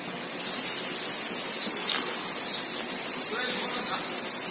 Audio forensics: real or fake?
real